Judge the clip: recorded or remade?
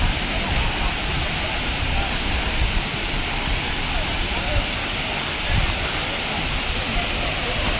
remade